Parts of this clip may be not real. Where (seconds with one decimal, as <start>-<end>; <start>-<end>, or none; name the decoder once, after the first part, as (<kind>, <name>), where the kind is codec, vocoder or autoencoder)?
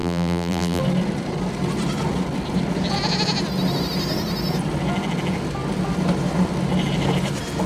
0.0-0.8 (vocoder, BigVGAN v2)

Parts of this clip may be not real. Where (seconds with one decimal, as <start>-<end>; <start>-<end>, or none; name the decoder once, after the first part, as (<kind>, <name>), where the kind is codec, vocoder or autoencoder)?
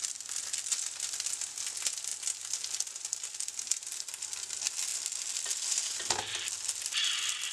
none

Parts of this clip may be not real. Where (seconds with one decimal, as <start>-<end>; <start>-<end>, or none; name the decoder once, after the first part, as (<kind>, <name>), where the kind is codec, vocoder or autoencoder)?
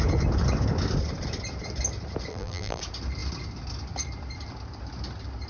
2.3-2.8 (vocoder, BigVGAN v2)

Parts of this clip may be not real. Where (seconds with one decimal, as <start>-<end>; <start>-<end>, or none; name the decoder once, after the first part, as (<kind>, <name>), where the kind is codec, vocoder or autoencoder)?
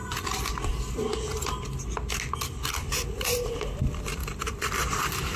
0.0-1.1 (vocoder, BigVGAN v2); 2.4-5.4